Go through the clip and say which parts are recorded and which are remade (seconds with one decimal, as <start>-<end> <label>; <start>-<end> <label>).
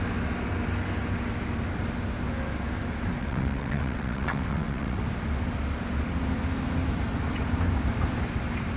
0.0-3.2 recorded; 3.2-5.0 remade; 5.0-8.8 recorded